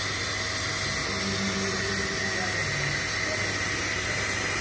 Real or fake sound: real